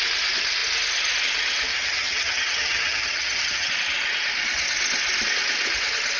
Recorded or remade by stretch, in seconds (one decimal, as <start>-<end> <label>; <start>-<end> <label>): 0.0-1.7 recorded; 1.7-3.7 remade; 3.7-6.2 recorded